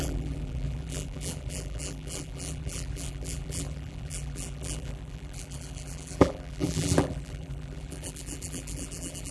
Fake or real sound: fake